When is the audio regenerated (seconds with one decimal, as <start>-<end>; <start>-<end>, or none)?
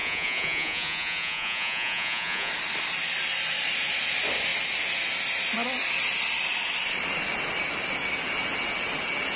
0.0-2.5